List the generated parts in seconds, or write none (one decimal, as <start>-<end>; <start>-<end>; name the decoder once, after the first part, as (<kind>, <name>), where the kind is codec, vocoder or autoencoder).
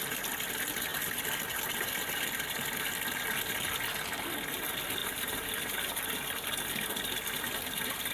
5.0-5.5 (vocoder, BigVGAN v2)